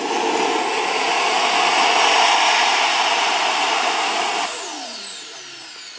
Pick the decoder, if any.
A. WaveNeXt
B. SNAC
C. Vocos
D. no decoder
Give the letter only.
D